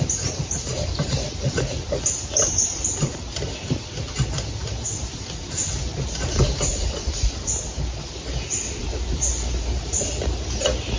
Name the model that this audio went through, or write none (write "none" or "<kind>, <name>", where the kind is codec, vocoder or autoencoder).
none